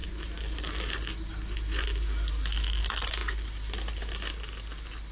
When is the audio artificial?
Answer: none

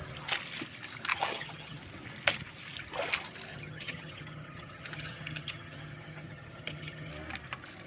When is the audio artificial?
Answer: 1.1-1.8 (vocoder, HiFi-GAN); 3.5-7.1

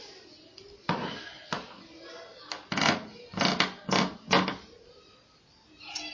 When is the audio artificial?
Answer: none

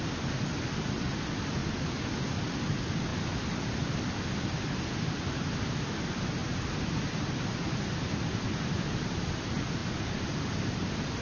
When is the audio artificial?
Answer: none

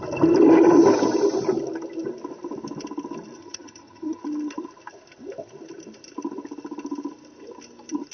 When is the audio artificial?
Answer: 3.4-4.2 (vocoder, HiFi-GAN)